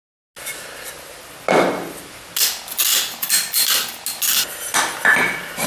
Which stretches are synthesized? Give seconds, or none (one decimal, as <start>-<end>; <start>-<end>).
none

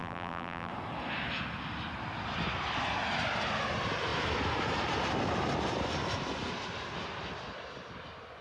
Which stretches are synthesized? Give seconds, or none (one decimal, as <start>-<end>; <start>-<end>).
0.0-0.7

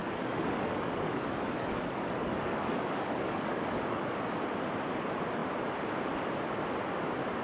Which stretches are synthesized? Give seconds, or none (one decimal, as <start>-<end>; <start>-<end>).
0.0-4.1

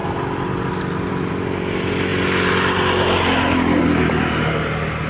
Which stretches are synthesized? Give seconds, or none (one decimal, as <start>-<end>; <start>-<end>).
none